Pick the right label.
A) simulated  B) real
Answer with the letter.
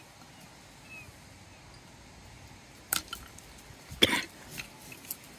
B